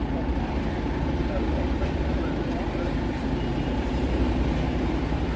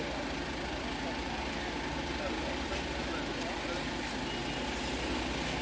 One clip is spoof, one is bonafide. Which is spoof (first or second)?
first